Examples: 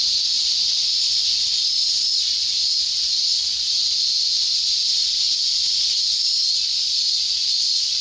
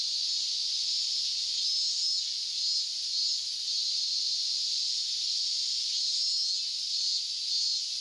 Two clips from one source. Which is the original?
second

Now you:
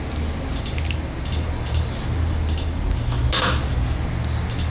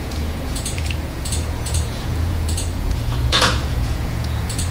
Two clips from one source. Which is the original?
first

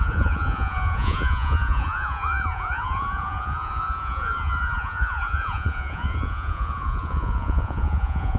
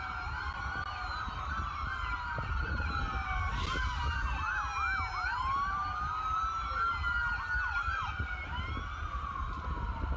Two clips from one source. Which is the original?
second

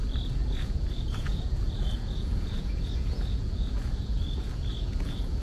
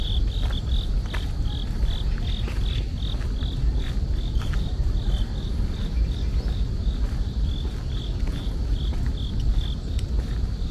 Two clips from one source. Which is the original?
second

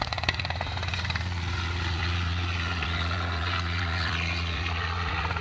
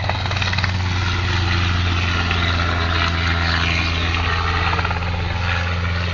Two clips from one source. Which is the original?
second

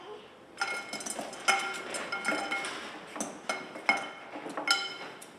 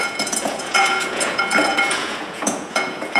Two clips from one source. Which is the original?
first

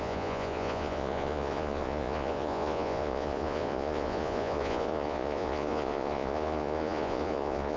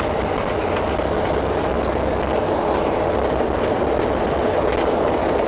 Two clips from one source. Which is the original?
second